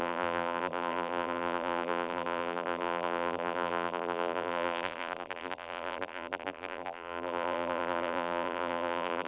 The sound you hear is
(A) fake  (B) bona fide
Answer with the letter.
A